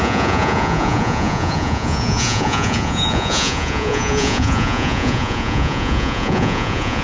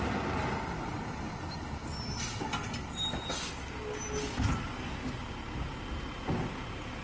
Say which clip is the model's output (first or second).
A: first